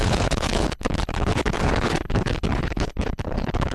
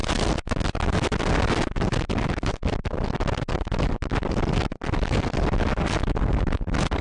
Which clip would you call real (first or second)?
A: second